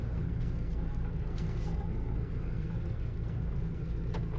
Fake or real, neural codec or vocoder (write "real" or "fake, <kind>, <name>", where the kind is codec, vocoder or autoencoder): fake, codec, SNAC